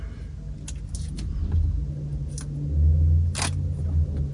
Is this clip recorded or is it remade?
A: recorded